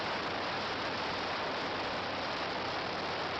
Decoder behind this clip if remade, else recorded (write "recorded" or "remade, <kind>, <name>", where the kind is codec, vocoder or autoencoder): recorded